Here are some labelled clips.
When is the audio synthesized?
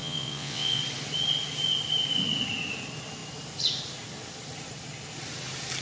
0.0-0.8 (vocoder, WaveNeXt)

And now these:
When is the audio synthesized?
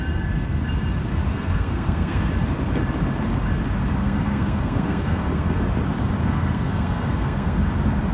1.3-2.3 (codec, SNAC); 4.0-5.6; 6.2-7.6